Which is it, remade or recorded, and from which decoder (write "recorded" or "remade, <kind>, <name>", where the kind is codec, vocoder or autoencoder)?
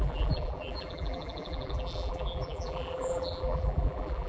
remade, vocoder, BigVGAN v2